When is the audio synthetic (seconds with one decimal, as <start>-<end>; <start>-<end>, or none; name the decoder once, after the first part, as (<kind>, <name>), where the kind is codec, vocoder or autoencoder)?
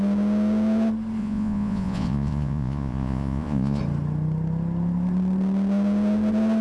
1.2-3.8 (vocoder, Vocos)